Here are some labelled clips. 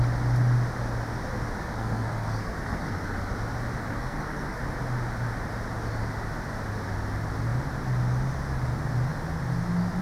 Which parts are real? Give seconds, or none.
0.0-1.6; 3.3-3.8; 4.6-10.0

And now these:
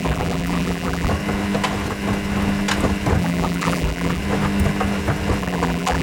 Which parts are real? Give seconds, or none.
1.1-3.2; 4.2-5.4

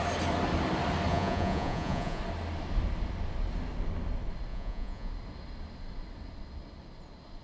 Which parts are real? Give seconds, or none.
0.0-1.1; 2.2-4.5; 5.1-7.4

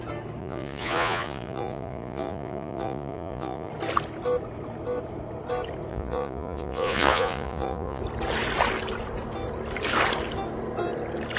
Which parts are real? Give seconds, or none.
0.0-0.4; 3.7-5.9; 8.0-11.4

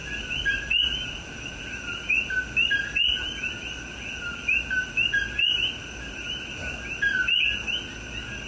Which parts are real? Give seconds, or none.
0.0-8.5

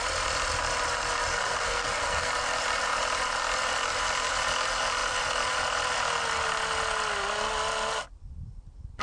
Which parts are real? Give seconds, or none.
0.0-1.3; 2.3-9.0

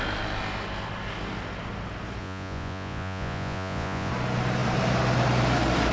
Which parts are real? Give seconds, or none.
0.0-2.2; 4.1-5.9